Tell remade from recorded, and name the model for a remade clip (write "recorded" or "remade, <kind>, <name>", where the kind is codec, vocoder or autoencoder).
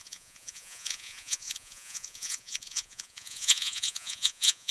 remade, vocoder, Vocos